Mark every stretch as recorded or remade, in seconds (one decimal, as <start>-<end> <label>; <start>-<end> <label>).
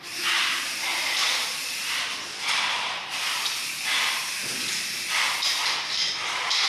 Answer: 0.0-0.9 recorded; 0.9-3.6 remade; 3.6-4.4 recorded; 4.4-5.3 remade; 5.3-6.7 recorded